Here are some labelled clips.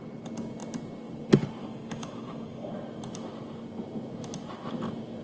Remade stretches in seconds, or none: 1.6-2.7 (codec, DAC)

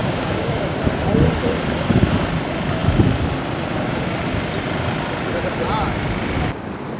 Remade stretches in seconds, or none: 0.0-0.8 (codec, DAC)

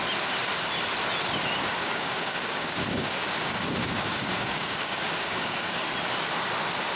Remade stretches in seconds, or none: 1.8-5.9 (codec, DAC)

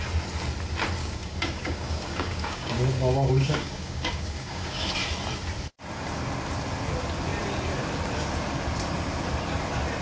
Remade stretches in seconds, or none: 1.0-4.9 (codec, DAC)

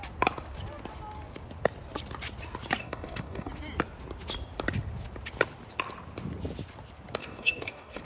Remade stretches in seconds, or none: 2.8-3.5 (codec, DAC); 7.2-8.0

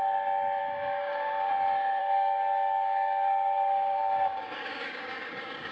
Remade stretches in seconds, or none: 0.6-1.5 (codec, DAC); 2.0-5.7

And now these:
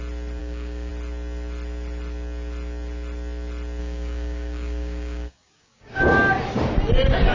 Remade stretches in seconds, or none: 0.4-0.9 (codec, DAC); 3.8-6.0